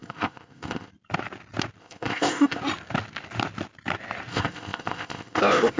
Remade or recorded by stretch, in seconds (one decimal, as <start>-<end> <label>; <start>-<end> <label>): 0.0-0.9 remade; 0.9-1.8 recorded; 1.8-2.6 remade; 2.6-4.3 recorded; 4.3-5.8 remade